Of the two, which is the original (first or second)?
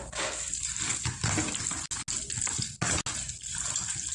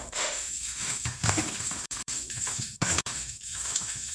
first